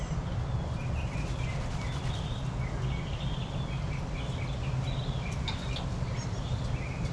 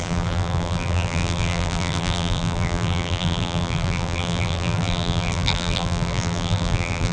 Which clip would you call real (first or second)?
first